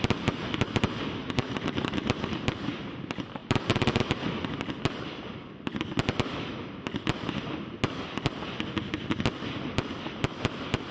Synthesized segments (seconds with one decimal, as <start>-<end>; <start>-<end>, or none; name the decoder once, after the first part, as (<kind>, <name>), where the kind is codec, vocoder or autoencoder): 1.2-2.8 (vocoder, BigVGAN v2); 3.4-4.2